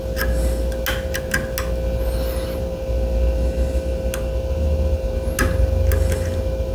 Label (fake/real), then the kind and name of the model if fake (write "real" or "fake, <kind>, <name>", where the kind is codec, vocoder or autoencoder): real